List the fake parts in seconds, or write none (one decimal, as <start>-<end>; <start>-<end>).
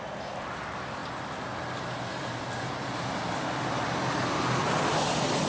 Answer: none